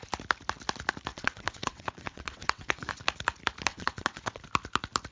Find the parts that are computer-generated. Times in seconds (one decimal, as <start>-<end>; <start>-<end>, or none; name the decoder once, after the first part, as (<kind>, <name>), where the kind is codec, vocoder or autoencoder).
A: 1.1-2.9 (vocoder, WaveNeXt); 3.7-4.4